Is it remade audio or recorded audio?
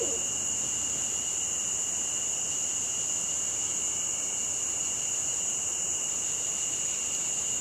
recorded